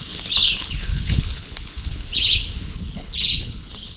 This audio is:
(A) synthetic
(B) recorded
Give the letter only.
A